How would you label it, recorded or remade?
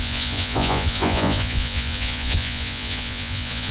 remade